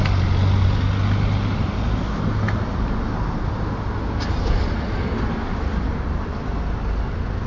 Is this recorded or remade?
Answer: recorded